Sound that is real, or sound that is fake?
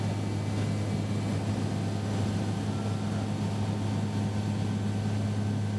real